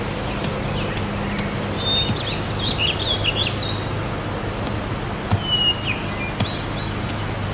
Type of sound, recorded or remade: recorded